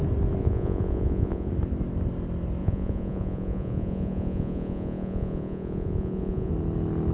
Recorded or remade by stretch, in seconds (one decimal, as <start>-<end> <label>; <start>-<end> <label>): 0.0-0.4 recorded; 0.4-1.5 remade; 1.5-2.6 recorded; 2.6-6.5 remade; 6.5-7.1 recorded